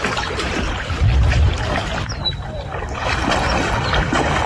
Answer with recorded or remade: remade